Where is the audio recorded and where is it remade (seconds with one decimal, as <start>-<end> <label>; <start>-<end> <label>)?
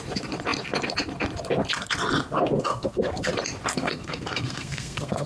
0.0-2.6 recorded; 2.6-3.3 remade; 3.3-3.7 recorded; 3.7-5.3 remade